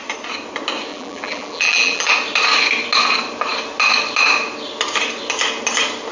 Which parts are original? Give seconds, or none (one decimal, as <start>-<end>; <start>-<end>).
0.0-0.9; 2.1-6.1